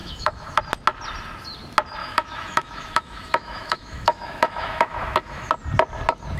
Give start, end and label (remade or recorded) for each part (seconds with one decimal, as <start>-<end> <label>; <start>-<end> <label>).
0.0-0.6 remade; 0.6-2.0 recorded; 2.0-5.5 remade; 5.5-6.4 recorded